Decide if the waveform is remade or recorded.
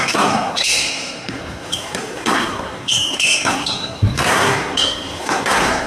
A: remade